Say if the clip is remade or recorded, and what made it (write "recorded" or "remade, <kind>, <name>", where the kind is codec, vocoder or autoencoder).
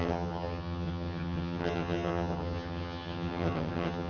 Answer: remade, vocoder, HiFi-GAN